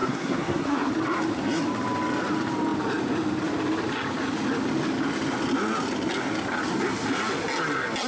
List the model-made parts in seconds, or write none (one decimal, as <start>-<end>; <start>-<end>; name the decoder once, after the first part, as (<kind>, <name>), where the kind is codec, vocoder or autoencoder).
0.0-0.9 (codec, SNAC)